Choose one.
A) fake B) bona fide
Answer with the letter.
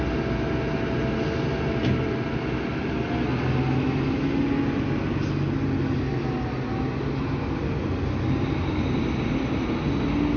B